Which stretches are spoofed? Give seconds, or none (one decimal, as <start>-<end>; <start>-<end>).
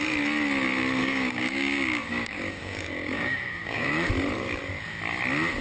1.0-4.1